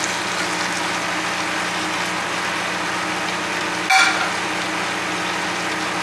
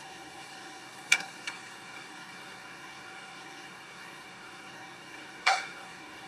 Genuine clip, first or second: first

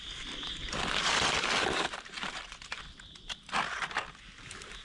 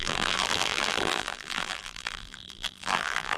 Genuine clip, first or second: first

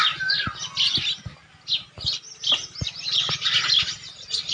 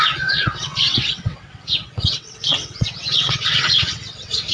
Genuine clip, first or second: first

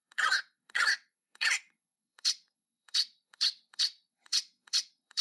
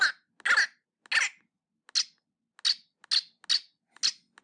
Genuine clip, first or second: second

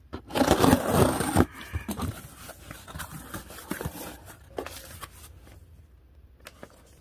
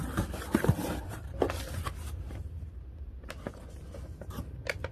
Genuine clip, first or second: first